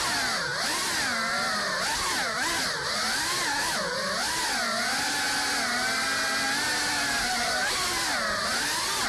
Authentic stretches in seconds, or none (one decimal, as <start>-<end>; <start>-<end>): 0.0-9.1